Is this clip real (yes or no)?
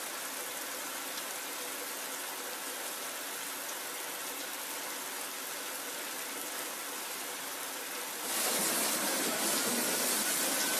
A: yes